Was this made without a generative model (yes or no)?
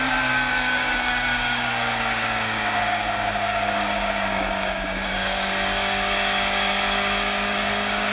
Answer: no